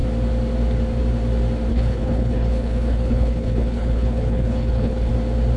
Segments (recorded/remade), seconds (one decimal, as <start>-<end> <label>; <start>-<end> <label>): 0.0-1.7 recorded; 1.7-5.1 remade; 5.1-5.6 recorded